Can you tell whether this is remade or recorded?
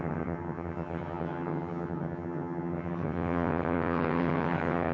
remade